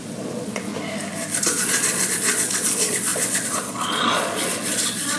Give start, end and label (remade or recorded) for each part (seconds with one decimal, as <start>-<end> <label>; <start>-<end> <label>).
0.0-0.7 remade; 0.7-1.4 recorded; 1.4-5.2 remade